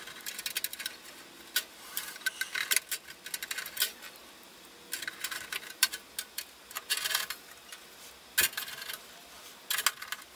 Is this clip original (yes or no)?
yes